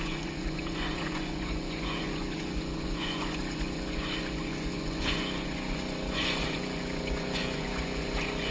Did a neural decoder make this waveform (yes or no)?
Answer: yes